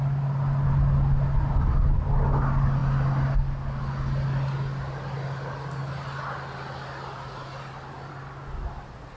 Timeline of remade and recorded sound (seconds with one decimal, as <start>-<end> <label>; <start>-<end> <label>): 0.0-9.2 recorded